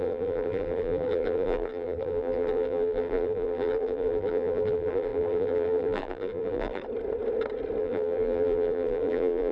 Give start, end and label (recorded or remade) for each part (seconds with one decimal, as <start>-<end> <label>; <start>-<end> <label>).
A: 0.0-6.8 remade; 6.8-7.8 recorded; 7.8-9.5 remade